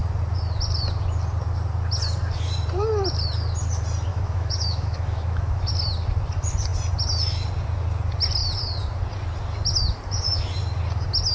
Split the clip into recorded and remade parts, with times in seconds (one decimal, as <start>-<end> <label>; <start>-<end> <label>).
0.0-4.1 recorded; 4.1-5.7 remade; 5.7-11.3 recorded